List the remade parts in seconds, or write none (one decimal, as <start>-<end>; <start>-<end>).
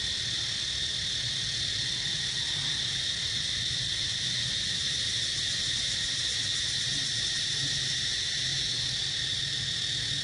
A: 6.5-8.0; 8.5-9.5